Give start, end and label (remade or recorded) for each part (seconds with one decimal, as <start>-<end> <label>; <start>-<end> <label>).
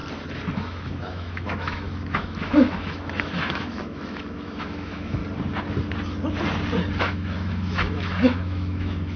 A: 0.0-0.5 recorded; 0.5-5.2 remade; 5.2-7.0 recorded; 7.0-9.2 remade